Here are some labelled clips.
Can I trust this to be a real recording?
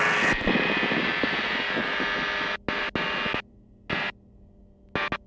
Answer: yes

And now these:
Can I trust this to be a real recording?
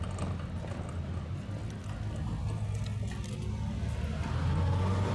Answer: yes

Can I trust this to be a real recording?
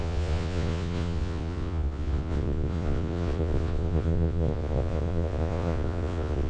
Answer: no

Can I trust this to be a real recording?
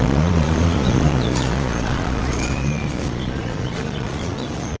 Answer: no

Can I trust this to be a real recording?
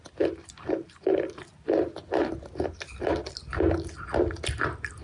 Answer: yes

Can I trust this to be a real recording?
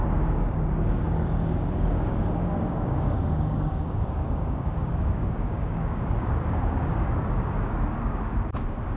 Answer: no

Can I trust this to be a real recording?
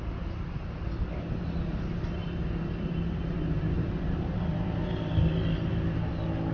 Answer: yes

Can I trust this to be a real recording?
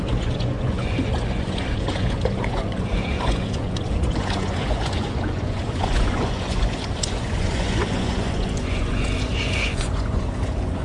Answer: no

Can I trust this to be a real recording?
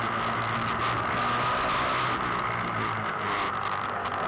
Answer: yes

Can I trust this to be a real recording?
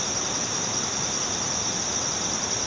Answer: yes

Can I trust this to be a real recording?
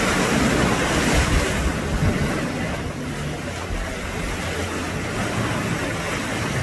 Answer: yes